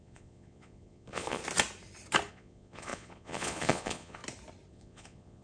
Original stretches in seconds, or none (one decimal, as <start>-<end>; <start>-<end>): 1.4-2.3; 4.2-4.7